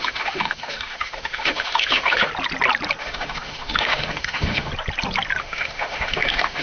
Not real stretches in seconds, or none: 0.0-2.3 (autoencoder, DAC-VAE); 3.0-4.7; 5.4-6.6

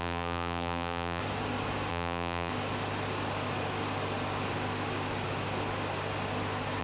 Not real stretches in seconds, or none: 0.0-1.2 (vocoder, BigVGAN v2); 1.9-2.5

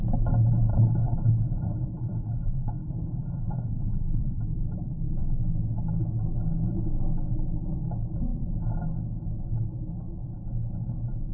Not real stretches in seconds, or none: 0.7-4.4 (codec, HILCodec)

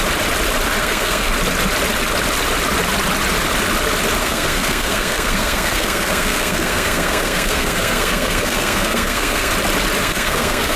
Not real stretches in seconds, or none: 0.8-1.3 (codec, SNAC); 4.2-9.5; 10.0-10.8

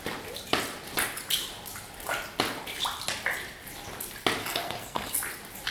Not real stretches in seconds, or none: 4.4-5.1 (codec, SNAC)